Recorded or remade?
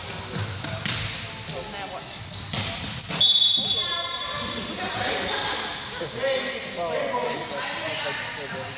recorded